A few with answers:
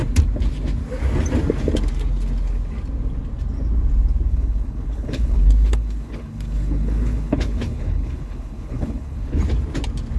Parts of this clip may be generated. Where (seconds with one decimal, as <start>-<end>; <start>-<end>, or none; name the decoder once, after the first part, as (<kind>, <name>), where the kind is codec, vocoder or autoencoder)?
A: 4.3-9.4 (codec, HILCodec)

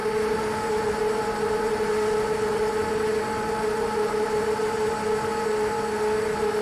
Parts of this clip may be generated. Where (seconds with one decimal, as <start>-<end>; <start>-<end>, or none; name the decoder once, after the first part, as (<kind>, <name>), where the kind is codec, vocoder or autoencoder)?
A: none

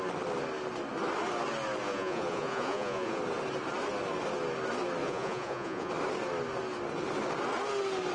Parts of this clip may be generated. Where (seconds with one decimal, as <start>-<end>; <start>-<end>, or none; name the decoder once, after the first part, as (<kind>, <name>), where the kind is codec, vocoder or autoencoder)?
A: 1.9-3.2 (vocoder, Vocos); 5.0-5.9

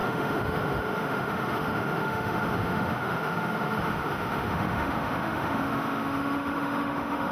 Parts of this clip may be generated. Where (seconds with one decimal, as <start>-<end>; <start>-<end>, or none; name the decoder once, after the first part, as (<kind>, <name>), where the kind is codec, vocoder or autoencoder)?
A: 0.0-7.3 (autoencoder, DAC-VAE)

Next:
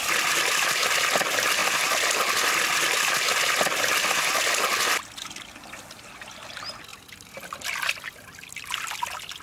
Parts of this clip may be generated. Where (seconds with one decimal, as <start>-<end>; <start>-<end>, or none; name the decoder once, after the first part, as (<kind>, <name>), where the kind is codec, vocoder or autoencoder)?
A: none

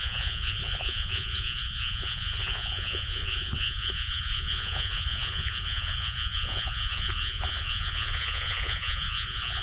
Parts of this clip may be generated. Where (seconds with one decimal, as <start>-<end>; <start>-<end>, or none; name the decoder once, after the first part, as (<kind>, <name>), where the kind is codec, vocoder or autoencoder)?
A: 0.0-9.6 (vocoder, Vocos)

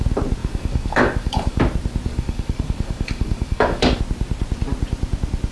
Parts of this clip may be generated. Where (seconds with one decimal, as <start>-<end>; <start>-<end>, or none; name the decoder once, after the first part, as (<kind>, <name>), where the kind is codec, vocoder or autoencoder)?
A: 0.4-1.6 (codec, DAC); 2.1-4.0